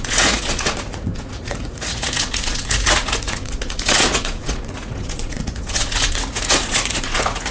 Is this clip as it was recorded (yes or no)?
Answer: no